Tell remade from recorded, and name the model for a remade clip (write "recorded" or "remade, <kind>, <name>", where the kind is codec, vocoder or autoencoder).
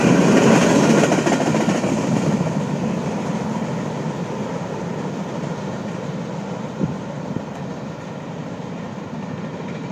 recorded